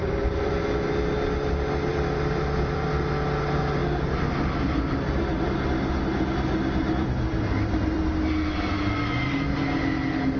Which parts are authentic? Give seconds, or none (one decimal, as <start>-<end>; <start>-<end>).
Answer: 0.6-1.9; 2.9-6.8; 8.0-10.4